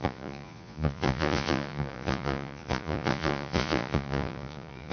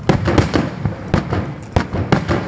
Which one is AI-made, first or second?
first